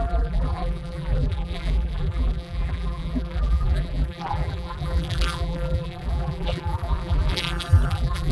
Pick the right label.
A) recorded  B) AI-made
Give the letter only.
B